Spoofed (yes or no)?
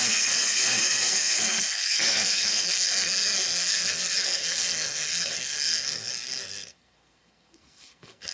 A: yes